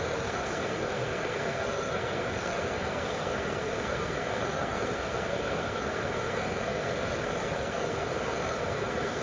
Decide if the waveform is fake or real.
fake